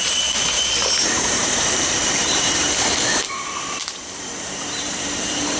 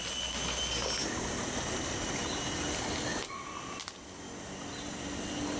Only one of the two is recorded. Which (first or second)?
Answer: second